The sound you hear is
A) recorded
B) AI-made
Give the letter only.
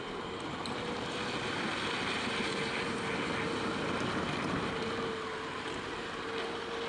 A